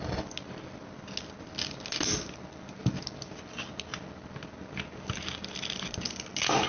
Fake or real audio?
real